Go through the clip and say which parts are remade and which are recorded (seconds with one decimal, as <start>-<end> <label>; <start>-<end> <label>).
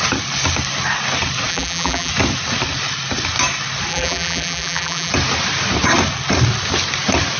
0.0-1.5 recorded; 1.5-2.1 remade; 2.1-3.9 recorded; 3.9-5.1 remade; 5.1-7.4 recorded